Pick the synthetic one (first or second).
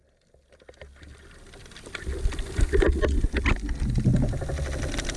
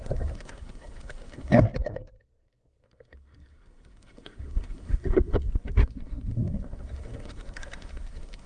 second